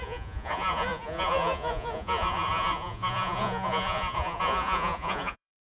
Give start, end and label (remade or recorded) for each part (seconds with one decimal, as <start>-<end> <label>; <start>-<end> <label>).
0.0-5.6 remade